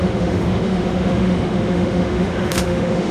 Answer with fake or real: fake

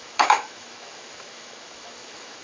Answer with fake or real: fake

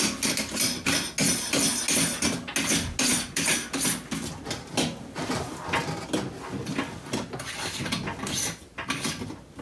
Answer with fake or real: real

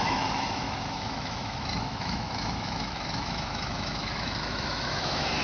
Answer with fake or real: fake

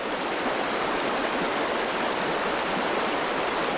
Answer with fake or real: real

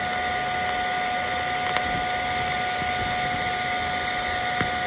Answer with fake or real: real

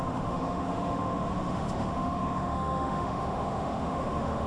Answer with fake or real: fake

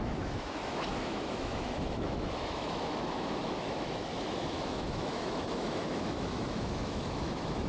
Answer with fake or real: fake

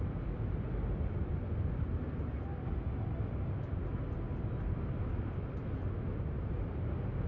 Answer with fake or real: real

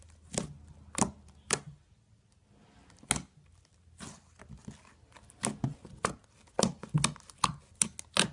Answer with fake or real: real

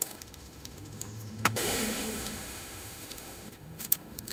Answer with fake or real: fake